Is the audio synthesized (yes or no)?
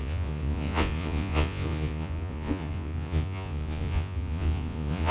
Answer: yes